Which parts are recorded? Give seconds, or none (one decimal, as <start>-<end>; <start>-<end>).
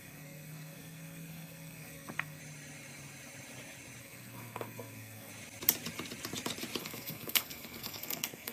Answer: 2.4-4.0; 5.3-6.8